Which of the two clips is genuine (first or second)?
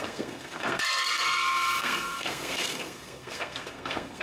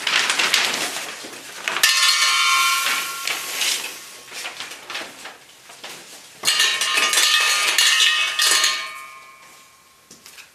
second